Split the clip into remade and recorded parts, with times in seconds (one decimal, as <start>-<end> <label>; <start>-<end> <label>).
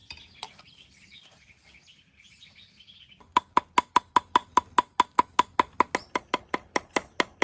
0.0-7.4 recorded